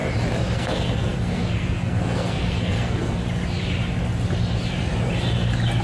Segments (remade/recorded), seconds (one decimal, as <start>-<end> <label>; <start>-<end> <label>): 0.0-0.5 recorded; 0.5-3.2 remade; 3.2-5.8 recorded